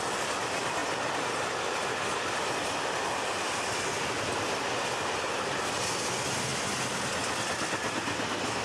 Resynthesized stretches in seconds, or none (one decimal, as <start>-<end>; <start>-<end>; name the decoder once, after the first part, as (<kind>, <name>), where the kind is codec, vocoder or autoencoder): none